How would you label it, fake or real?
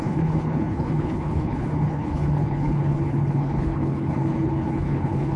fake